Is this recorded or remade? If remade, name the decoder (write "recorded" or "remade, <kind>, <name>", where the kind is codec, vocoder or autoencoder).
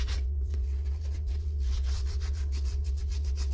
remade, vocoder, WaveNeXt